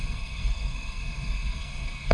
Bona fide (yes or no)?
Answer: no